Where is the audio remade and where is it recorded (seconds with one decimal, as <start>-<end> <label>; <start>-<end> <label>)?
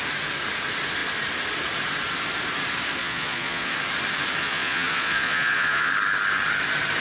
0.0-3.0 recorded; 3.0-3.7 remade; 3.7-4.4 recorded; 4.4-5.9 remade; 5.9-7.0 recorded